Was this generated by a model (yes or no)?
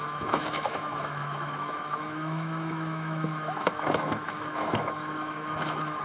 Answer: yes